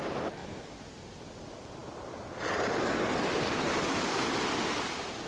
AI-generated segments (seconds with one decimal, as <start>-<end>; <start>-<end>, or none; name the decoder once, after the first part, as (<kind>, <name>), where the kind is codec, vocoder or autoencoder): none